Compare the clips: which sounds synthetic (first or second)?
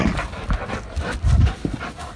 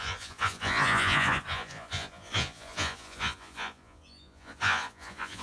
second